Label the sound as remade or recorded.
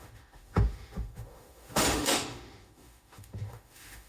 remade